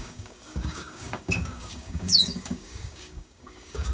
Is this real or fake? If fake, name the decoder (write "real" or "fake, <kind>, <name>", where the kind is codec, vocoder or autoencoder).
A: fake, codec, DAC